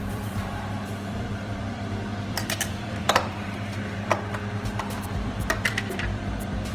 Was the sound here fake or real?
fake